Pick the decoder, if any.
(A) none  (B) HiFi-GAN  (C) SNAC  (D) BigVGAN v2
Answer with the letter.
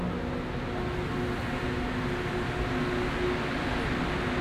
A